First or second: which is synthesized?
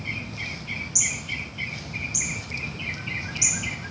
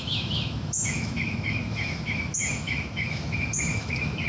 second